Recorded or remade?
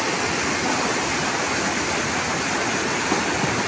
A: recorded